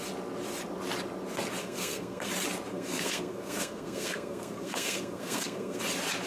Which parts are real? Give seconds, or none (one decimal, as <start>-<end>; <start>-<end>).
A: 0.0-1.6; 2.3-2.7; 5.8-6.3